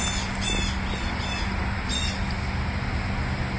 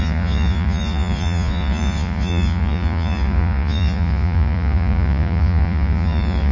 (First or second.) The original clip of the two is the first